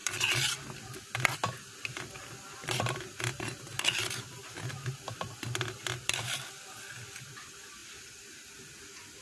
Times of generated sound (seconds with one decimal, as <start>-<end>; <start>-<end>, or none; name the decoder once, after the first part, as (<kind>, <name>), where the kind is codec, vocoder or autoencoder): 0.0-0.5 (vocoder, BigVGAN v2); 5.8-6.5